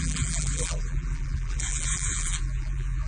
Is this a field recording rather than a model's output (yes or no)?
no